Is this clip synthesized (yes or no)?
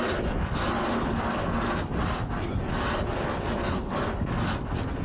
no